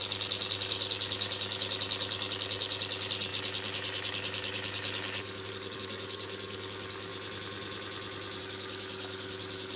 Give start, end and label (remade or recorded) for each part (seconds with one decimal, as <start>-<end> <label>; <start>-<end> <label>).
0.0-7.1 remade; 7.1-8.4 recorded; 8.4-9.8 remade